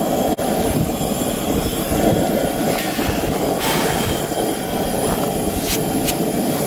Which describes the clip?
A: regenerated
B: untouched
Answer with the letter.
B